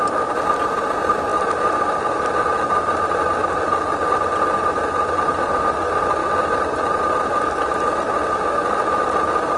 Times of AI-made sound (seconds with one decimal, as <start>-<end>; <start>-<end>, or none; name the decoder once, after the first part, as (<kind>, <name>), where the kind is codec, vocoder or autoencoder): none